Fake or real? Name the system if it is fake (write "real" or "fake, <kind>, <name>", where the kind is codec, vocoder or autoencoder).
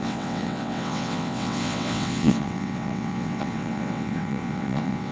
fake, vocoder, WaveNeXt